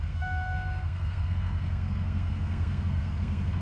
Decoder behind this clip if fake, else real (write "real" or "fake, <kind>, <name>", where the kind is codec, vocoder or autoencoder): fake, codec, SNAC